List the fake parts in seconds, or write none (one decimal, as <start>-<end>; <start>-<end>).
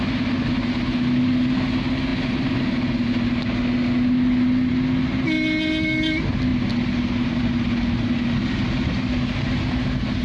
none